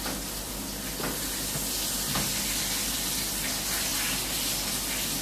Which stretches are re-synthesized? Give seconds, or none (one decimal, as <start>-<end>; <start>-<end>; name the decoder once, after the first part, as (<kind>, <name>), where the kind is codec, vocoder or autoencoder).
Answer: none

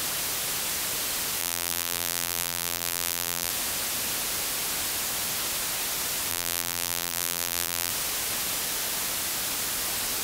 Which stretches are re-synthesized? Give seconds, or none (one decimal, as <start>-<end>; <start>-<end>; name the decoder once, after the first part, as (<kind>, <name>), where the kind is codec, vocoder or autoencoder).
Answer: 1.4-3.5 (vocoder, BigVGAN v2); 6.3-7.9

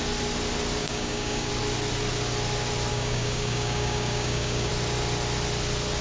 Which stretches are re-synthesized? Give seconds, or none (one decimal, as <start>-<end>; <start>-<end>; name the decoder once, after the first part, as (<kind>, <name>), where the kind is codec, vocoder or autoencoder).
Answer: 0.8-1.5 (codec, DAC); 2.9-4.7

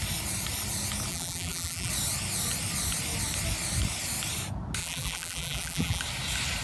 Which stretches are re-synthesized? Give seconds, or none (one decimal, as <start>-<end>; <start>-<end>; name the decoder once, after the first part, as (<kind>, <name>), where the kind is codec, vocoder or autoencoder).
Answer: 1.1-1.9 (vocoder, BigVGAN v2); 4.8-6.0